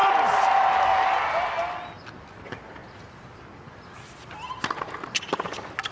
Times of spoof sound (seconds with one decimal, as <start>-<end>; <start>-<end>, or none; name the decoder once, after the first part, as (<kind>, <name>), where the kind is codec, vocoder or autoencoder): none